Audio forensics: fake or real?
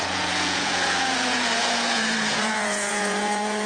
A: fake